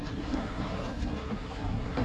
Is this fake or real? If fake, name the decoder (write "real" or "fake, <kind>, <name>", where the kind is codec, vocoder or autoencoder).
fake, codec, SNAC